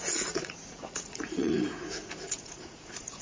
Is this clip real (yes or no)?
no